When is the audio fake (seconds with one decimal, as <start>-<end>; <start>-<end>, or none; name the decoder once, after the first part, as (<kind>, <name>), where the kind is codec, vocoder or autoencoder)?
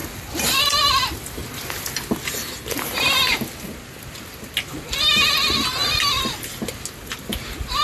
none